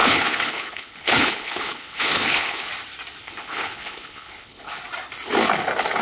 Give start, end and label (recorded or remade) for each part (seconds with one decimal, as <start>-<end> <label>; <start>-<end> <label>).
0.0-2.7 remade; 2.7-3.2 recorded; 3.2-4.8 remade; 4.8-6.0 recorded

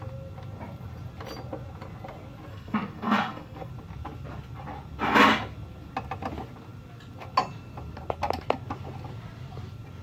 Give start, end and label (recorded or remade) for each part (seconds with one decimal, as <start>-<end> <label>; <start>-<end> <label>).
0.0-2.5 recorded; 2.5-3.7 remade; 3.7-10.0 recorded

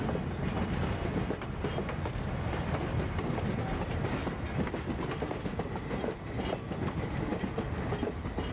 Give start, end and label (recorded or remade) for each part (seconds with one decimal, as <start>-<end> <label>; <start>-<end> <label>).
0.0-8.5 recorded

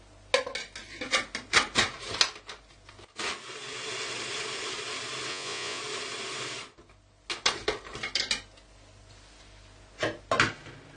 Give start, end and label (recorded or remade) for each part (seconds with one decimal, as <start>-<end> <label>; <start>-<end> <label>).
0.0-5.3 recorded; 5.3-5.8 remade; 5.8-11.0 recorded

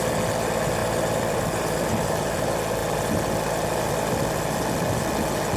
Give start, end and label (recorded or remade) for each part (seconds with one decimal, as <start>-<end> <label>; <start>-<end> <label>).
0.0-0.8 recorded; 0.8-1.4 remade; 1.4-5.6 recorded